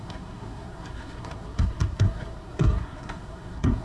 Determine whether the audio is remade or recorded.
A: remade